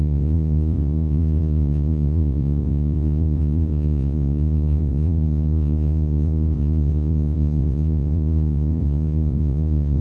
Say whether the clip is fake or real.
fake